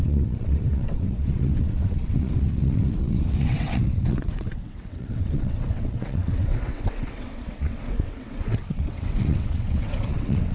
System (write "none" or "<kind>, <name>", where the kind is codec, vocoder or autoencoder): vocoder, WaveNeXt